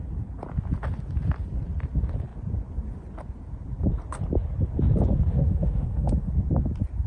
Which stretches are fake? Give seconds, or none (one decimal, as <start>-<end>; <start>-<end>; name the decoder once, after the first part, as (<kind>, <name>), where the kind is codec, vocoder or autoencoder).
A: 5.3-6.3 (autoencoder, DAC-VAE)